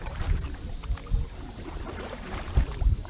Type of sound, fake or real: fake